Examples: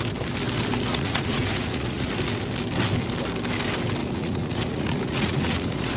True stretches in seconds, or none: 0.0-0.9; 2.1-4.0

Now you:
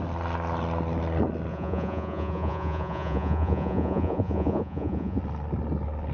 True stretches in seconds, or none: 0.0-1.5; 5.2-6.1

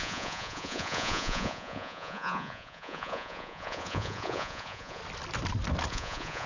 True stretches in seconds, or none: 5.0-5.9

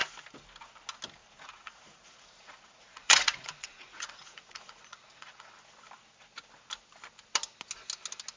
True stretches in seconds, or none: 0.0-1.2; 5.5-8.4

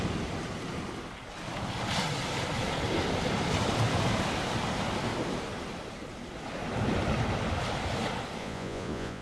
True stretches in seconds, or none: 0.0-8.4

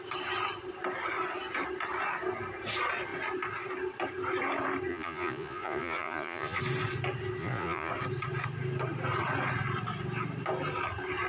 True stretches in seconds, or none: 0.0-4.9; 6.6-7.4; 7.9-11.3

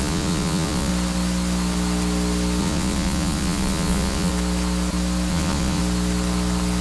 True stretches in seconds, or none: 0.9-2.6; 4.3-5.3; 5.8-6.8

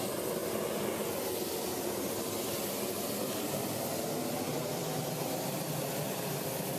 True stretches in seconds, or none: 0.0-6.8